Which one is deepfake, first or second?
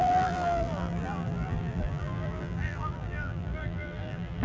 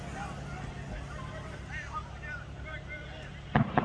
first